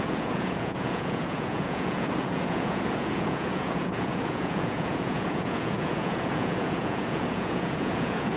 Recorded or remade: remade